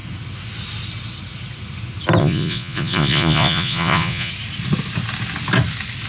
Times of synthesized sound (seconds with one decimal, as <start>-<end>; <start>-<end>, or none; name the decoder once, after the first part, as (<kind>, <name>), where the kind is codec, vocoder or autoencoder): 2.2-4.3 (vocoder, Vocos)